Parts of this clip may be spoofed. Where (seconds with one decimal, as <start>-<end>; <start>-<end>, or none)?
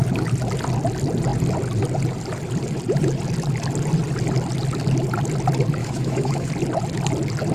5.8-6.5